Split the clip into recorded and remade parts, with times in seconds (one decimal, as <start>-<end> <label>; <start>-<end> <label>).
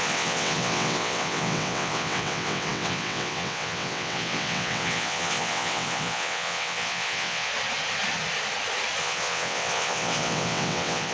0.0-7.5 remade; 7.5-9.0 recorded; 9.0-11.1 remade